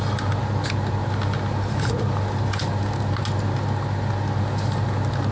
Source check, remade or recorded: recorded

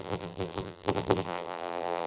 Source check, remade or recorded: remade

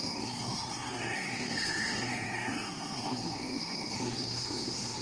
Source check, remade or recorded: remade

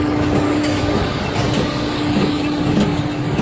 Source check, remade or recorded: remade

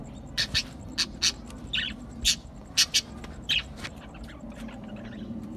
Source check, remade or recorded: recorded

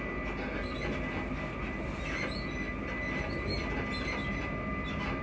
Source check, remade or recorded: recorded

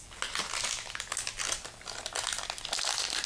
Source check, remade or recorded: recorded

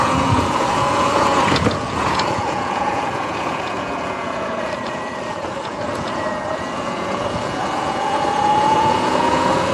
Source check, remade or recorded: remade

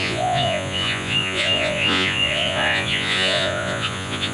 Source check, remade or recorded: remade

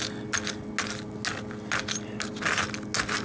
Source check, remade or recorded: recorded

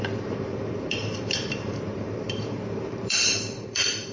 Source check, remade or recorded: remade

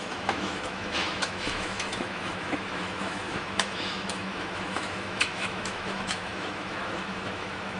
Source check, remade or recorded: remade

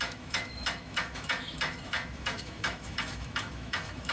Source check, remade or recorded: remade